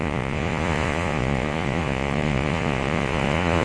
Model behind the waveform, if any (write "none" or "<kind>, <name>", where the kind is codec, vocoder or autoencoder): vocoder, Vocos